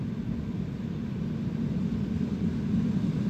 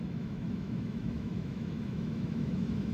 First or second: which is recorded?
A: first